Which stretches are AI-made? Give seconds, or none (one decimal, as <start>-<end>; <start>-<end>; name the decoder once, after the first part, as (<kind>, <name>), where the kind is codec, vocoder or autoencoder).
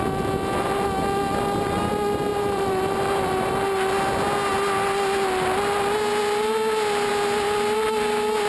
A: 2.3-3.5 (vocoder, BigVGAN v2)